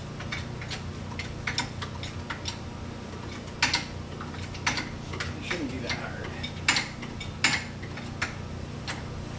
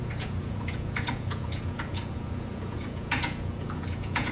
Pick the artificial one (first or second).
second